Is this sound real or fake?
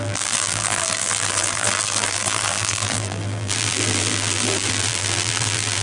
fake